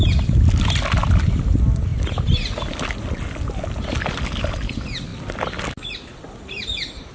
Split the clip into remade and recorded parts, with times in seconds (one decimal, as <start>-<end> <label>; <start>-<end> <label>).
0.0-7.1 recorded